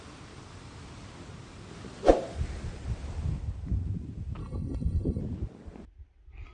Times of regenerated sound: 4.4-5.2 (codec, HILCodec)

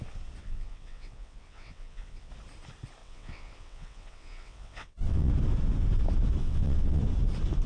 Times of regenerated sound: 0.4-2.3 (vocoder, WaveNeXt); 3.0-5.3; 6.4-7.0

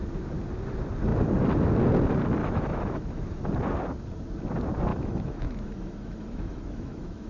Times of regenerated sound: 2.4-3.4 (autoencoder, DAC-VAE); 4.9-7.3

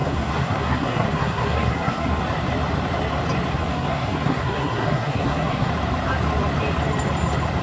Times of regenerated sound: 0.0-2.2 (codec, SNAC); 3.5-5.7

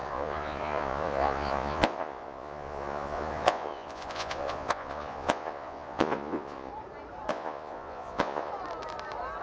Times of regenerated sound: 0.0-6.7 (vocoder, Vocos); 7.3-8.5